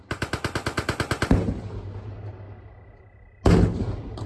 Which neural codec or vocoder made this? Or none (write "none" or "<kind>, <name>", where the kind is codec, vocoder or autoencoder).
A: none